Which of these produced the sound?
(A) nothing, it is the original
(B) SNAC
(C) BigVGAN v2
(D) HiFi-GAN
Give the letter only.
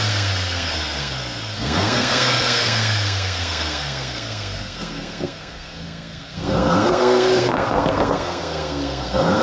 B